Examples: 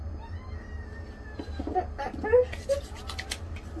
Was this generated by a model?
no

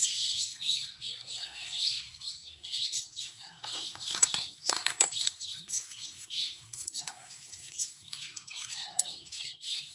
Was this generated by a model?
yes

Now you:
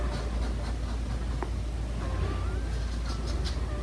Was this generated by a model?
no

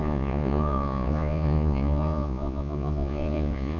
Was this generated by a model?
yes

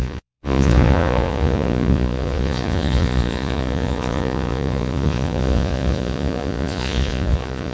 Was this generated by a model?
yes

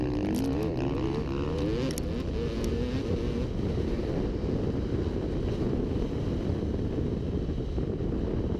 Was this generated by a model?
no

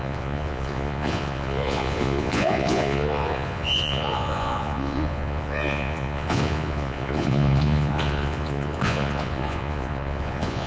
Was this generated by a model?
yes